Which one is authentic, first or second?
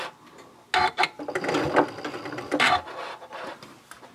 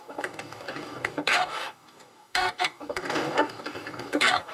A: first